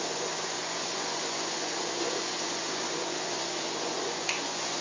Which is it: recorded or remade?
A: remade